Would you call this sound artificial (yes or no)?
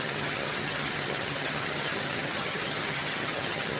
yes